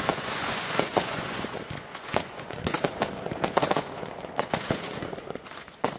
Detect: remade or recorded remade